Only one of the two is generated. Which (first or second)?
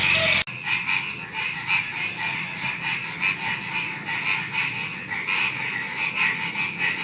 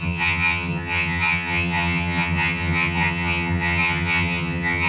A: second